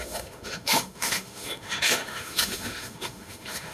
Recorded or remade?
remade